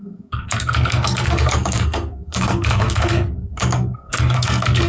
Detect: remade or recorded remade